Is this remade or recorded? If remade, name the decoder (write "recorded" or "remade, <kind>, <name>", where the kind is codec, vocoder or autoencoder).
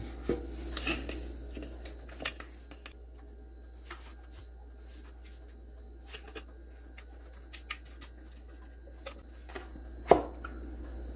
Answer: recorded